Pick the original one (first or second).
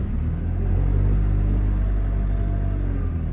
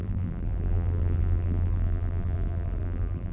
first